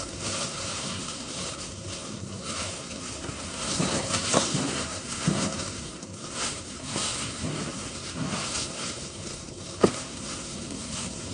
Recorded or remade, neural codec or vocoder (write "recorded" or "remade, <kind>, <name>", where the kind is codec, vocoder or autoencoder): remade, codec, SNAC